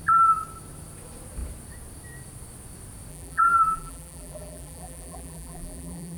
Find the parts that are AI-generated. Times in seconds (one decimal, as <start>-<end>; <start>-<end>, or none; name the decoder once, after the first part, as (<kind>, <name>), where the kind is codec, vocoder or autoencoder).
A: 3.1-6.2 (vocoder, BigVGAN v2)